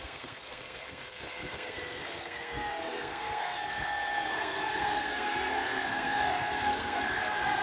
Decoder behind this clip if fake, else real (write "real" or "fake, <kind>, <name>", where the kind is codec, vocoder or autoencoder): fake, codec, SNAC